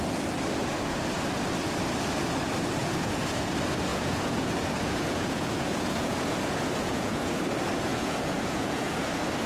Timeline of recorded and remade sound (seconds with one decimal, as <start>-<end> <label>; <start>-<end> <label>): 0.0-2.8 recorded; 2.8-3.5 remade; 3.5-3.9 recorded; 3.9-7.4 remade; 7.4-7.9 recorded; 7.9-8.9 remade; 8.9-9.5 recorded

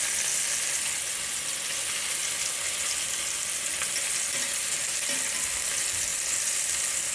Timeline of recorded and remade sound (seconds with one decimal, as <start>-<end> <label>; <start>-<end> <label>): 0.0-2.2 recorded; 2.2-5.5 remade; 5.5-6.1 recorded; 6.1-6.6 remade; 6.6-7.1 recorded

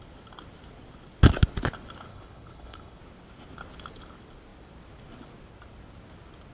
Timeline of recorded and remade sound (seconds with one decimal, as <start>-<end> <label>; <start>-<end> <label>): 0.0-2.1 recorded; 2.1-3.0 remade; 3.0-6.5 recorded

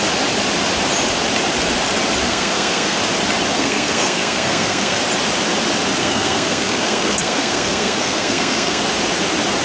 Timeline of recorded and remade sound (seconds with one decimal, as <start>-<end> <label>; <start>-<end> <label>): 0.0-2.2 recorded; 2.2-3.0 remade; 3.0-3.5 recorded; 3.5-5.0 remade; 5.0-6.0 recorded; 6.0-8.8 remade; 8.8-9.6 recorded

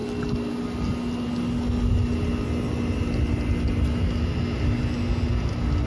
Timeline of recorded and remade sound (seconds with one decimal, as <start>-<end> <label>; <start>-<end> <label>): 0.0-5.9 recorded